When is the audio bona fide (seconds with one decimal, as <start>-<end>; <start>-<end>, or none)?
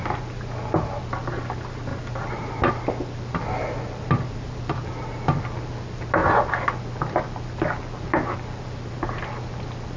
0.0-10.0